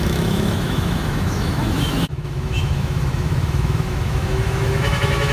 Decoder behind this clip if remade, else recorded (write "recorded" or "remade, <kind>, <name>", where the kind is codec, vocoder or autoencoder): remade, autoencoder, DAC-VAE